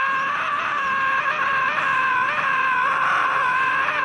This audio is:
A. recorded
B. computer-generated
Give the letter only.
B